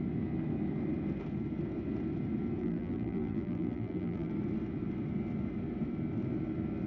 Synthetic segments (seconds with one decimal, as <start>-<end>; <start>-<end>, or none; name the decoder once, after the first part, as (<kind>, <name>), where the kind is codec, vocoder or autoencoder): 2.6-4.3 (vocoder, BigVGAN v2)